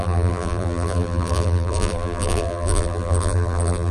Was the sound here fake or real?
fake